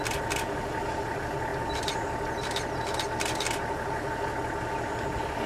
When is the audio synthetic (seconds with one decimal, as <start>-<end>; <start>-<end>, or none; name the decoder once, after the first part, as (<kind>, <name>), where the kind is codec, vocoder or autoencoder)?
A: none